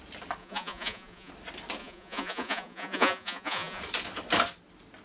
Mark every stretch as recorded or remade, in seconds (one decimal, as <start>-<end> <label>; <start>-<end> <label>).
0.0-0.4 recorded; 0.4-1.3 remade; 1.3-1.8 recorded; 1.8-3.8 remade; 3.8-5.0 recorded